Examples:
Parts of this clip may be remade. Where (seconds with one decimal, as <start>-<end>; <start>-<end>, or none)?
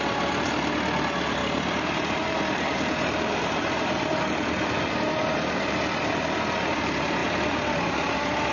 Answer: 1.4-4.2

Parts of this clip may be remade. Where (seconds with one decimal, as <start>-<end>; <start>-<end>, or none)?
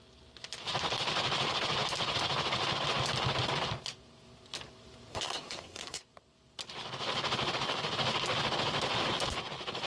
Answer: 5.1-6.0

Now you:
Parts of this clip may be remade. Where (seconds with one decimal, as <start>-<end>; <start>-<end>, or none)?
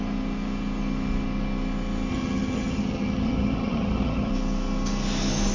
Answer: 2.1-4.3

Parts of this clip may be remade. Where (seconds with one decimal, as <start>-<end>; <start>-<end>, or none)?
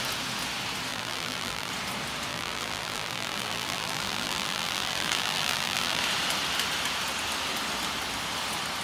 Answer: 0.9-1.7; 2.3-6.0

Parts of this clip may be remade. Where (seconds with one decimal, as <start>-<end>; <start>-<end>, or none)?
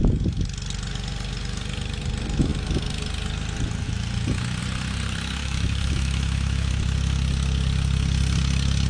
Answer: 5.4-6.7